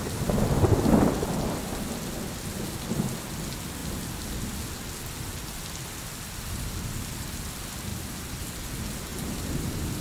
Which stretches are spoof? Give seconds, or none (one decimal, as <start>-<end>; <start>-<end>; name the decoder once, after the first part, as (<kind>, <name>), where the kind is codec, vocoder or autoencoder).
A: 7.9-8.4 (vocoder, BigVGAN v2); 9.1-10.0